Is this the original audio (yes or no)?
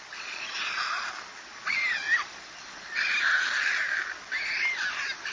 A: yes